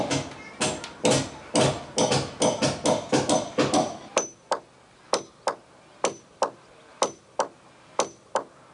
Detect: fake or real real